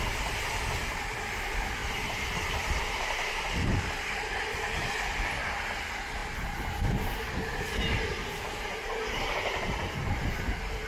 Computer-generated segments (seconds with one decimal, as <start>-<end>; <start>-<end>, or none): 1.8-4.9; 8.1-9.8